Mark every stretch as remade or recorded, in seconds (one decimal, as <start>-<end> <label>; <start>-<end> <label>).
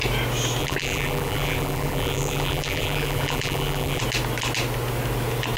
0.0-0.6 recorded; 0.6-4.0 remade; 4.0-5.6 recorded